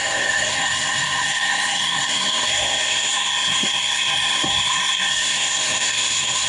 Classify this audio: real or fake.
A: fake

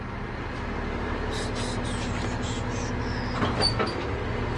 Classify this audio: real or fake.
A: real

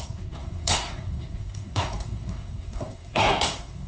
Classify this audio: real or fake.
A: fake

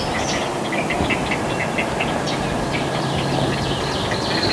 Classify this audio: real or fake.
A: real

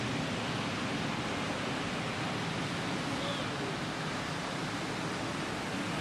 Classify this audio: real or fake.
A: real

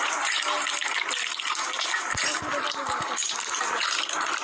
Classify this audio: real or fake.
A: real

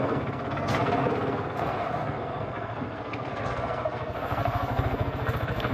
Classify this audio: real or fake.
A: fake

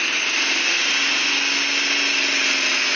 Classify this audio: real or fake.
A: real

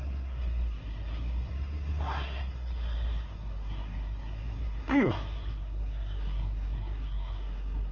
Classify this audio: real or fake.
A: fake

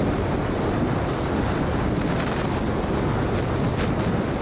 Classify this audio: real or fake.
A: real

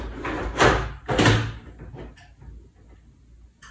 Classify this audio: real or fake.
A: real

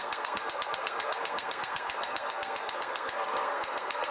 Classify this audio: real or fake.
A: fake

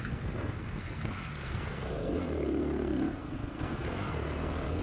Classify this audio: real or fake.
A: fake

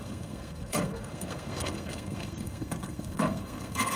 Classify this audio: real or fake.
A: fake